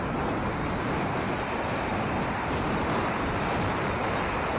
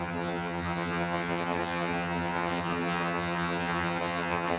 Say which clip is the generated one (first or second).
second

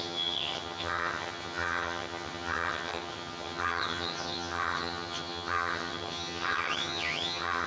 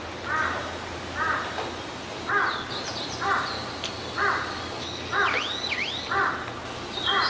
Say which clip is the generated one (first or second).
first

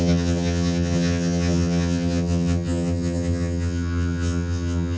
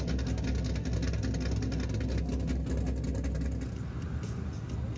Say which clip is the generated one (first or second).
first